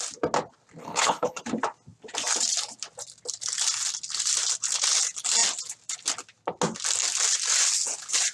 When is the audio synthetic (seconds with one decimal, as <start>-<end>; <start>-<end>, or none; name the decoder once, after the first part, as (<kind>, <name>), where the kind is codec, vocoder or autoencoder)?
0.8-1.4 (codec, HILCodec)